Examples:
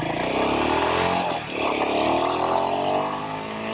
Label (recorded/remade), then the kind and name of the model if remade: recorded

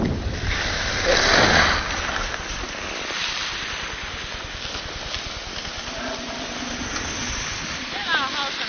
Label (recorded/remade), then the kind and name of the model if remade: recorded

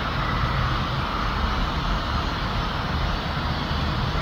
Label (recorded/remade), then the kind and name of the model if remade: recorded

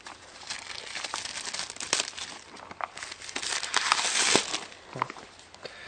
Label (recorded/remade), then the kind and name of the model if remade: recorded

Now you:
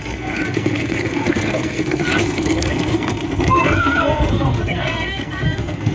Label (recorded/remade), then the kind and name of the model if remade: remade, codec, SNAC